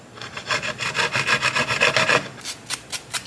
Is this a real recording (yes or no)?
yes